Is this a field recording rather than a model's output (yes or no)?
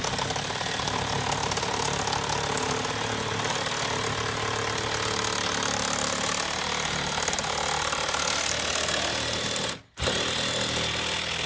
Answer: yes